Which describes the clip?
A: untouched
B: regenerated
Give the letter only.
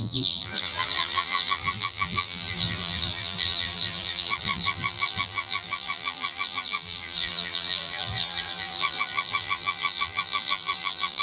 B